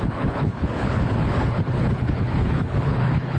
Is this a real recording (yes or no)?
no